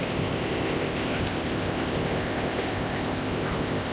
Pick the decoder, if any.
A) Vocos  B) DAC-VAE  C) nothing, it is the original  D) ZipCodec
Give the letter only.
D